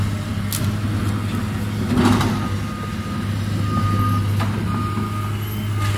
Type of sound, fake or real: real